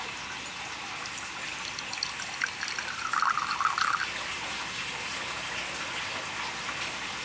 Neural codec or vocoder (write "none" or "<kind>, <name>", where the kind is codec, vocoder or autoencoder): none